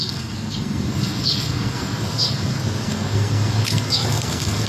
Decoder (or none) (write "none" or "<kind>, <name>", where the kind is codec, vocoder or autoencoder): codec, SNAC